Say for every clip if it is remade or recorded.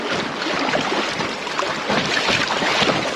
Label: recorded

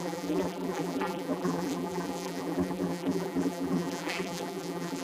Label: remade